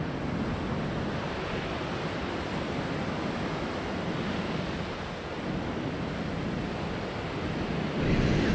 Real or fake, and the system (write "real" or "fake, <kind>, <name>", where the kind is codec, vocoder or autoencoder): real